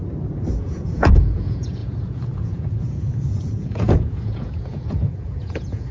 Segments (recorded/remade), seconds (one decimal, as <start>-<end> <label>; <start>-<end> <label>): 0.0-0.6 recorded; 0.6-5.9 remade